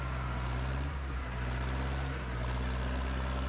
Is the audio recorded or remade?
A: recorded